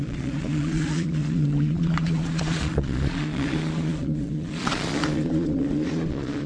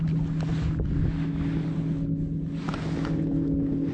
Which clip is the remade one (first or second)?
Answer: first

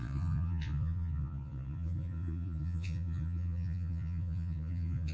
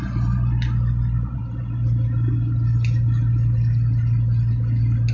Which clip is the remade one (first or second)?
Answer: first